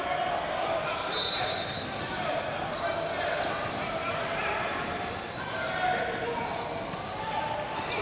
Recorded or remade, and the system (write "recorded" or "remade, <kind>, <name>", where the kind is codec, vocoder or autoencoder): recorded